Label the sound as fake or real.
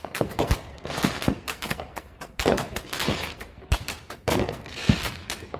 fake